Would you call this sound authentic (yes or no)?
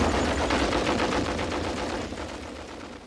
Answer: yes